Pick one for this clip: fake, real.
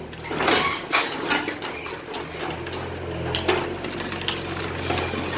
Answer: real